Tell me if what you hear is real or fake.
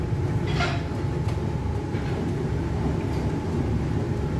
real